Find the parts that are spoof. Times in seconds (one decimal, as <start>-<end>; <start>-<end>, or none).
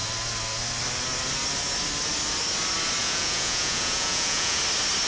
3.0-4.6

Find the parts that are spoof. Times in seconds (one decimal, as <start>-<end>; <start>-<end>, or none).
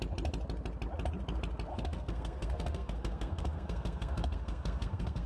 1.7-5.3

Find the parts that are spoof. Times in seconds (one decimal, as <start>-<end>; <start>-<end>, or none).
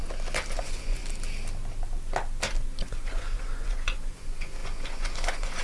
0.6-1.0; 2.8-5.6